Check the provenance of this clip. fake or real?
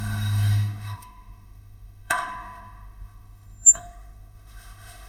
fake